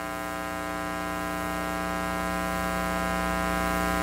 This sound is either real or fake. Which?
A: real